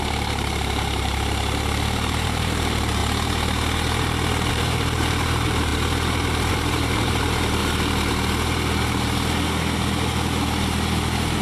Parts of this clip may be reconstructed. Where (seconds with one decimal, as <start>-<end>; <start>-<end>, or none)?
0.0-3.0; 4.5-5.7; 6.5-7.6